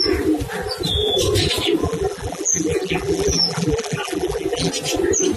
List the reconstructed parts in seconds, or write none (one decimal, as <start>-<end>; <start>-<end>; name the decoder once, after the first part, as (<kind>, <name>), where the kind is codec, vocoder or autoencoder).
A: 1.8-4.7 (vocoder, BigVGAN v2)